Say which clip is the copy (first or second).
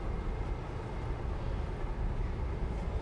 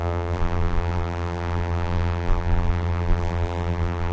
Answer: second